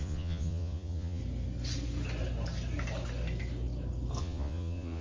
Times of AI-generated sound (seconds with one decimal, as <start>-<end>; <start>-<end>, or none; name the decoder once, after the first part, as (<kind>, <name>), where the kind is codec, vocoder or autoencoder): 0.0-1.2 (vocoder, Vocos); 4.2-5.0